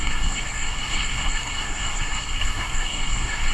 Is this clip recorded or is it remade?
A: remade